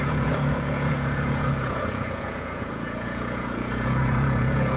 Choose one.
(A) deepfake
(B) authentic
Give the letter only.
A